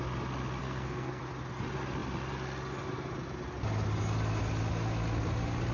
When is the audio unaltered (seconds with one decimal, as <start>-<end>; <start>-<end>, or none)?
0.0-0.6; 1.2-5.7